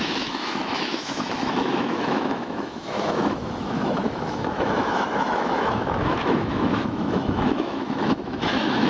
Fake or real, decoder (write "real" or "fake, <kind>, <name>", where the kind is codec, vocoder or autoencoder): fake, autoencoder, DAC-VAE